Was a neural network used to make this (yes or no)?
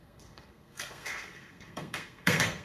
yes